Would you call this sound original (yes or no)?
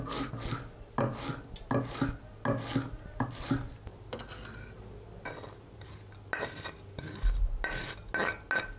yes